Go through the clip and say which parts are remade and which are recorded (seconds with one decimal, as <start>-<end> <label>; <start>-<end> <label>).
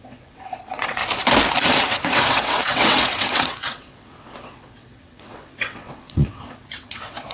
0.0-1.0 remade; 1.0-1.8 recorded; 1.8-7.3 remade